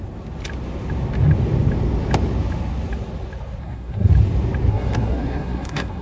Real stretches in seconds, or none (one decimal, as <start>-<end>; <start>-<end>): 0.0-3.6; 4.1-4.7